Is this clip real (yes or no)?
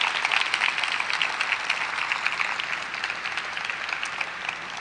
yes